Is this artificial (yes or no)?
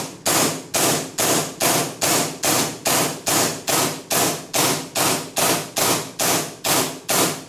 no